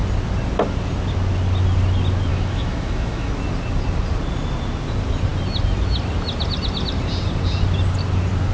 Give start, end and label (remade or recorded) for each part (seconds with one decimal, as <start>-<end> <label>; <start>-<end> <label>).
0.0-2.3 recorded; 2.3-3.3 remade; 3.3-8.5 recorded